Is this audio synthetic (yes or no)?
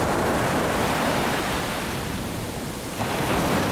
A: no